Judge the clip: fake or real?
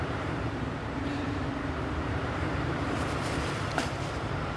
fake